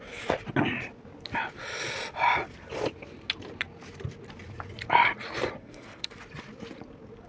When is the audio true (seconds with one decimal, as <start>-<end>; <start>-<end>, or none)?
0.0-5.6; 6.2-7.3

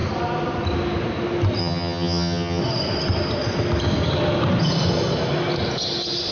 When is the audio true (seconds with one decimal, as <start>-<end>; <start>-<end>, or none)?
0.0-1.6; 2.6-6.3

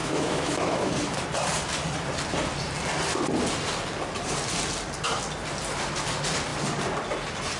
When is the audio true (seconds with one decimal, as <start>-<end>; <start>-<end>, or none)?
0.9-7.6

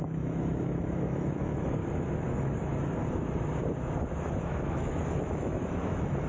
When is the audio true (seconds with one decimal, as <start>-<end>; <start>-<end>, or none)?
1.8-2.4; 3.0-4.1

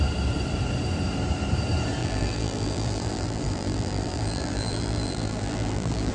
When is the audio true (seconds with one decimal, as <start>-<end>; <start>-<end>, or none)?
0.0-2.0

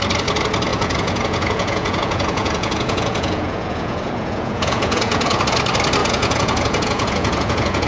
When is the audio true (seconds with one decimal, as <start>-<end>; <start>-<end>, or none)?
0.0-0.7; 5.4-6.0

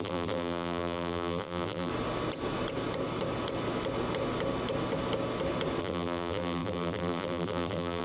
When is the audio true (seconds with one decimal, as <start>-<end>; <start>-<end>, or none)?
1.9-5.8

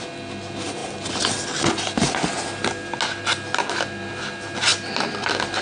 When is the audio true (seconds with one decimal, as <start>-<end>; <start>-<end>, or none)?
0.0-5.6